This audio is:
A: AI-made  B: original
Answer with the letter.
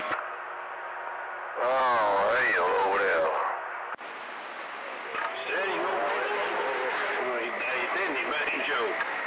B